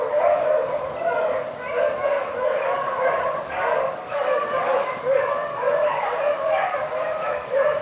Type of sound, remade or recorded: remade